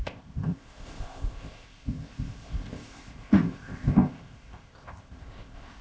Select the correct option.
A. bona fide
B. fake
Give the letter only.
B